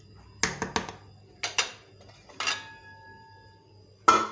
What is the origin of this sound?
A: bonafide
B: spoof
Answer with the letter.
A